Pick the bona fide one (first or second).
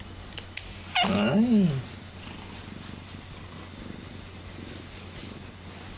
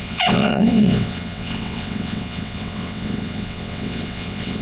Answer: first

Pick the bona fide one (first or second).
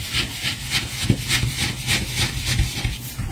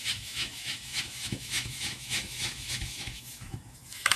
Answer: first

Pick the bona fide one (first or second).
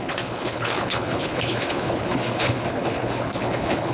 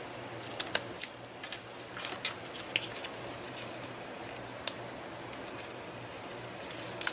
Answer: second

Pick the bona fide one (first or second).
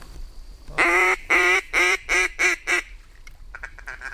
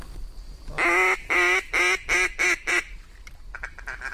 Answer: second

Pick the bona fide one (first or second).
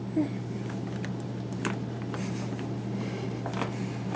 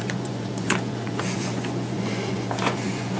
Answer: first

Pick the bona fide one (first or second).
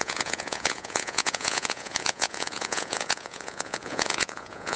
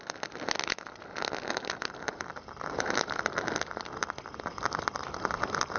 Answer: second